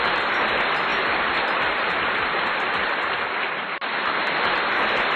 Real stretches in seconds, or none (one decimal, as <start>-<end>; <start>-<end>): 0.0-5.2